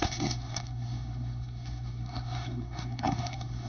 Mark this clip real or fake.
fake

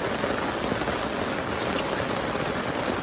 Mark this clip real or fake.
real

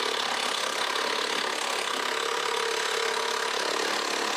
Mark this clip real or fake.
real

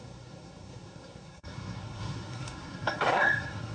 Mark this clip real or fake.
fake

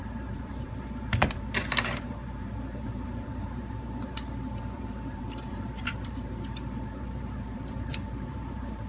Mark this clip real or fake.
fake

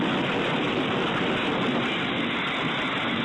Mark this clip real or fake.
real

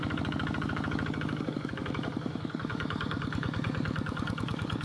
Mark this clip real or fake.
fake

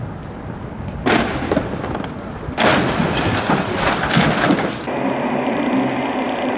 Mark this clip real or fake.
real